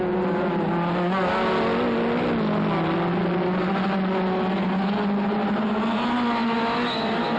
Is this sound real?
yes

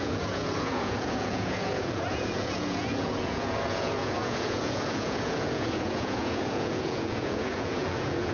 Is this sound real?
no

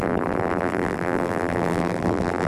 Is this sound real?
no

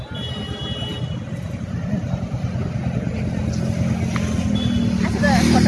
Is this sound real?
yes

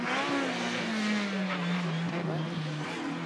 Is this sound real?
yes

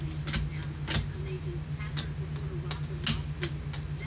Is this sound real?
yes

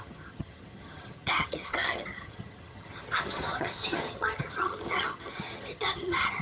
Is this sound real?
no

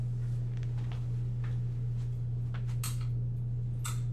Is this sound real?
yes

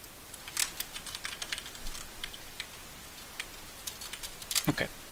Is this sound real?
yes